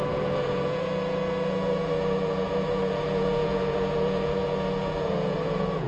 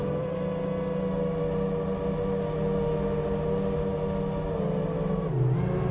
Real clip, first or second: second